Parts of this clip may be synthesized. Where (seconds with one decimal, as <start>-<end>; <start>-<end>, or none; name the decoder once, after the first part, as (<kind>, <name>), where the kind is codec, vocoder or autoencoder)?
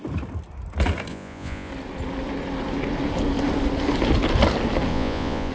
1.1-1.7 (vocoder, Vocos); 4.9-5.5